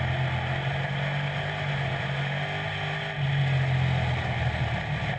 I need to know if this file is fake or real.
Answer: real